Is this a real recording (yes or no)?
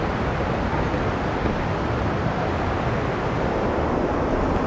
yes